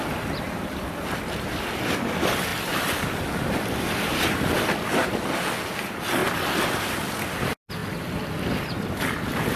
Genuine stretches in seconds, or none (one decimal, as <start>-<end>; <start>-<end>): 0.0-9.6